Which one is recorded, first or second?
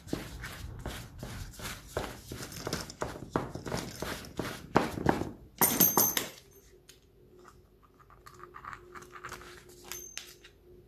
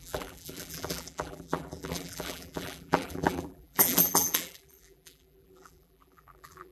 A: first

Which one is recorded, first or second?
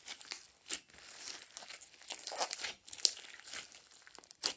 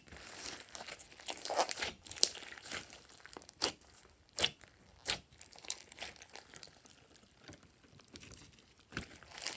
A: first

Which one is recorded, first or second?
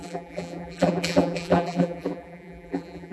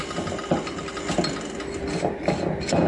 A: second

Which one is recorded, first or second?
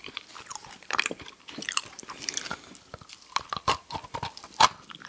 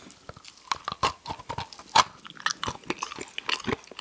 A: second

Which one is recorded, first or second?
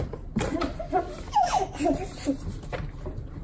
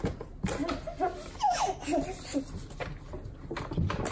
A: second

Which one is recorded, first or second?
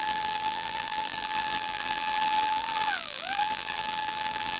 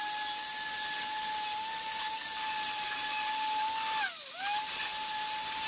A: second